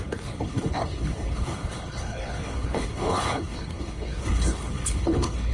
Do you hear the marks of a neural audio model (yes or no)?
yes